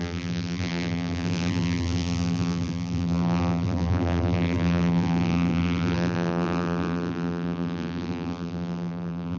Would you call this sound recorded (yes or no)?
no